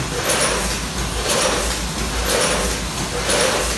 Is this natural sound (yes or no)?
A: yes